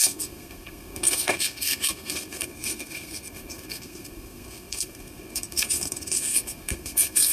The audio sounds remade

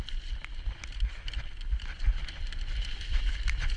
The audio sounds recorded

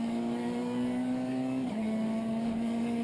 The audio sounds remade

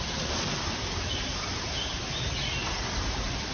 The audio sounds recorded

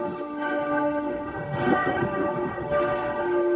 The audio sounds remade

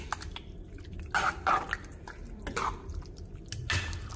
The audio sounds recorded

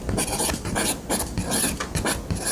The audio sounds recorded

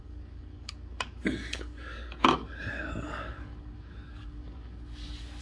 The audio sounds remade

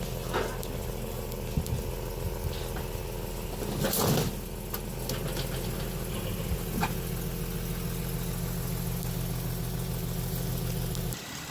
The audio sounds recorded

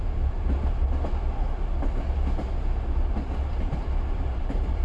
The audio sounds recorded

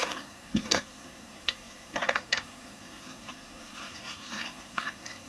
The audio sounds remade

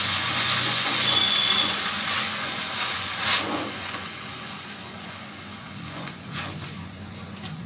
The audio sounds remade